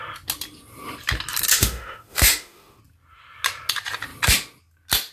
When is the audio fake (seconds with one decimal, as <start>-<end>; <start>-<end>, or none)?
1.5-2.8